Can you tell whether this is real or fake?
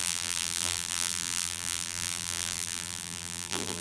fake